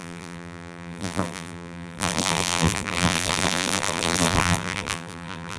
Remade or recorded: remade